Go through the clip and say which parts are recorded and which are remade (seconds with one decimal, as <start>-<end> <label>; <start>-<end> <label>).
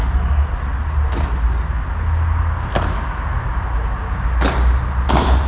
0.0-5.5 recorded